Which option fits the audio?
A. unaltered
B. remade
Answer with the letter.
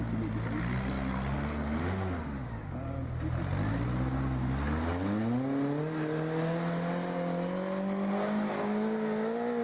A